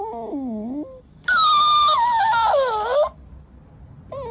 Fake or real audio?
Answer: real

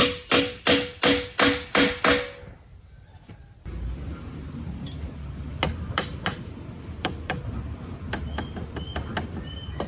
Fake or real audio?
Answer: real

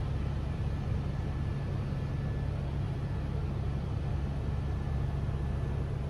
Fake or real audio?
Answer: real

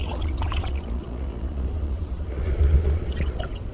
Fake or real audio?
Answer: fake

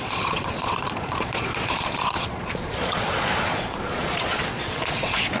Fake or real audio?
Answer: fake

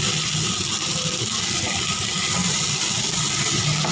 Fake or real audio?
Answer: real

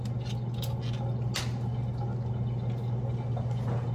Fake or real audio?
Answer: real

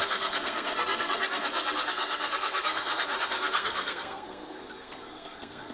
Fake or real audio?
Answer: fake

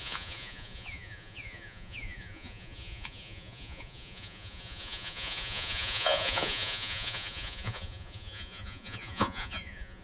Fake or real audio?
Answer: fake